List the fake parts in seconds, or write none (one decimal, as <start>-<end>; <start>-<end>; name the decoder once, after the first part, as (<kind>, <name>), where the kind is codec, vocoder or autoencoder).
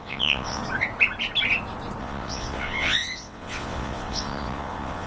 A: 0.0-0.6 (vocoder, WaveNeXt); 2.0-5.1